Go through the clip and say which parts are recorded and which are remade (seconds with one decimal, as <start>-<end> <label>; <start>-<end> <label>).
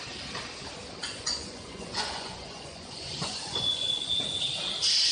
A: 0.0-1.0 recorded; 1.0-4.1 remade; 4.1-5.1 recorded